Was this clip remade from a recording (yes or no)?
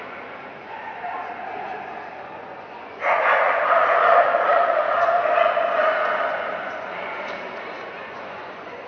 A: yes